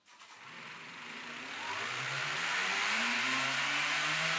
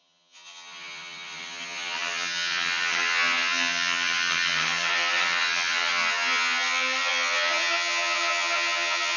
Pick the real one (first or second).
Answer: first